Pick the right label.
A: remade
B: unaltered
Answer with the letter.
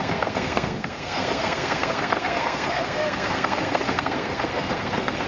A